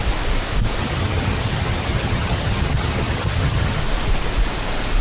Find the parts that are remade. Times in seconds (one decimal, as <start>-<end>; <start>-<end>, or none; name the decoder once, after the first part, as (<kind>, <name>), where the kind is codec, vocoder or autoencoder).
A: 0.8-3.8 (vocoder, HiFi-GAN)